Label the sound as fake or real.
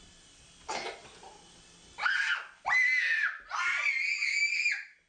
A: real